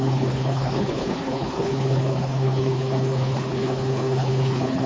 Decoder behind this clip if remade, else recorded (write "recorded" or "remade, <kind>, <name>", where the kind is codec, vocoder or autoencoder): remade, codec, HILCodec